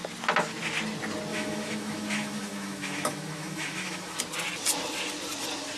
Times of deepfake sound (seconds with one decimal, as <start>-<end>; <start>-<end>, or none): 1.3-4.2